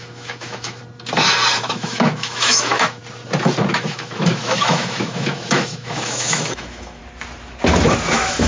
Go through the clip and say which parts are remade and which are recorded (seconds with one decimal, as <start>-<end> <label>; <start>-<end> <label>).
0.0-0.8 remade; 0.8-1.6 recorded; 1.6-3.0 remade; 3.0-3.7 recorded; 3.7-7.0 remade; 7.0-8.1 recorded; 8.1-8.5 remade